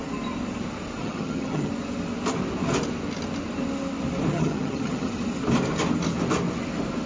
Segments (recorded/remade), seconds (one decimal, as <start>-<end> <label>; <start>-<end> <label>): 0.0-1.0 recorded; 1.0-1.7 remade; 1.7-4.3 recorded; 4.3-5.1 remade; 5.1-7.1 recorded

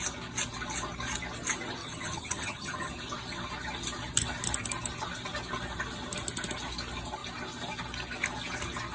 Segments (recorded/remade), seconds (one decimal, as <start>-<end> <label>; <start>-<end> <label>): 0.0-1.8 recorded; 1.8-2.9 remade; 2.9-8.9 recorded

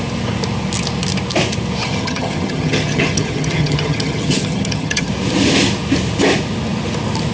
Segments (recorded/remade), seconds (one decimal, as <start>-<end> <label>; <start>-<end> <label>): 0.0-1.8 recorded; 1.8-5.1 remade; 5.1-7.3 recorded

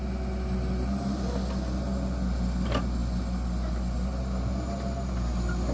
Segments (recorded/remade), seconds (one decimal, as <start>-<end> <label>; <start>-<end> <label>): 0.0-5.7 recorded

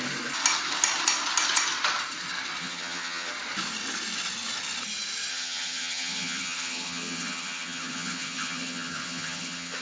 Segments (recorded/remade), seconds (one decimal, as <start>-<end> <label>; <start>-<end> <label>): 0.0-2.6 recorded; 2.6-3.3 remade; 3.3-5.3 recorded; 5.3-9.8 remade

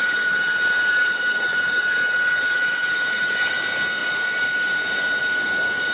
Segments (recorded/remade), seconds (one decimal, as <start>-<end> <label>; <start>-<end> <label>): 0.0-3.5 remade; 3.5-5.9 recorded